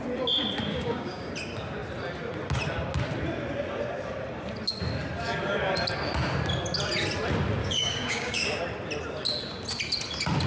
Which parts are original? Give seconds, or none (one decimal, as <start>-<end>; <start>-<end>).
0.0-0.7; 1.3-7.6; 8.6-10.5